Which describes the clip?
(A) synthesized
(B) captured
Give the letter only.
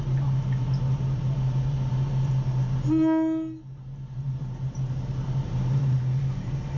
B